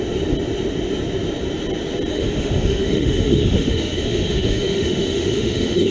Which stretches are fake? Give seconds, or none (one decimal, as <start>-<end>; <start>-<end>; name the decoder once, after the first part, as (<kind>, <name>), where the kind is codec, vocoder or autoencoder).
2.1-5.9 (autoencoder, DAC-VAE)